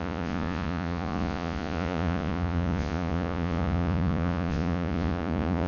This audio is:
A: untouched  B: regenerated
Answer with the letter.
B